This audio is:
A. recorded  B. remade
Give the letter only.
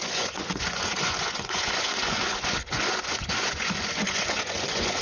B